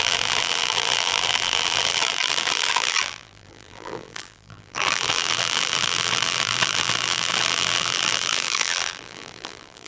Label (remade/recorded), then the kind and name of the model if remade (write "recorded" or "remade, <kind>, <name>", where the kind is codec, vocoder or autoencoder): remade, vocoder, BigVGAN v2